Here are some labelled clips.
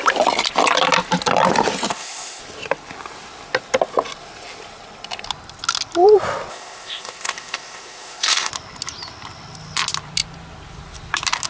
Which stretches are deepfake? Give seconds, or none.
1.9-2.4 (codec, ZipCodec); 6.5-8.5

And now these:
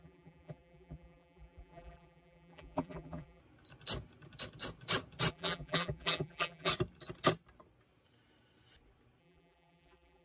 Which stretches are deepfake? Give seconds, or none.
0.0-3.4 (vocoder, BigVGAN v2); 5.3-6.7; 9.2-10.2

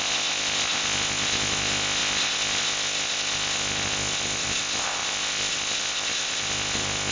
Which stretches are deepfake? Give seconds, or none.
0.0-7.1 (codec, ZipCodec)

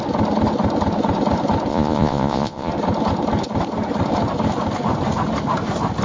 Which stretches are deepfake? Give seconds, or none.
1.7-2.7 (vocoder, Vocos)

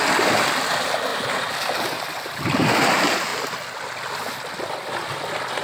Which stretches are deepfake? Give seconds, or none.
0.0-3.3 (vocoder, BigVGAN v2); 5.0-5.6

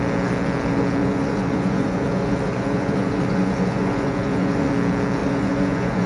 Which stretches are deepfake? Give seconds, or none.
1.0-4.7 (vocoder, Vocos); 5.2-6.1